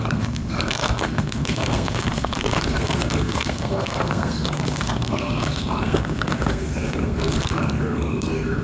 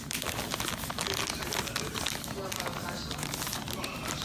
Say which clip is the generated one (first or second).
first